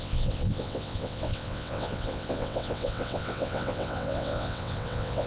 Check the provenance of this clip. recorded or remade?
remade